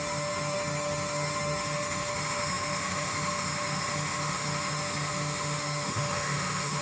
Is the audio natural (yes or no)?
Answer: no